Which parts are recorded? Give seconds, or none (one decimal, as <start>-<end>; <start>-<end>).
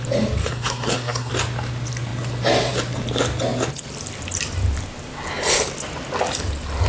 0.0-0.4; 1.3-6.9